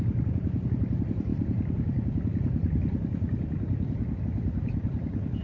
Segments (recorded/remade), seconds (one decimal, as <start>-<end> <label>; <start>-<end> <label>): 0.0-1.3 recorded; 1.3-4.2 remade; 4.2-5.4 recorded